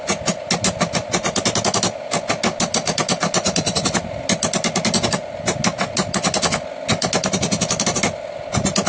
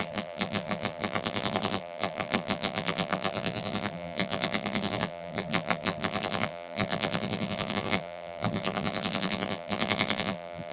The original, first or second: first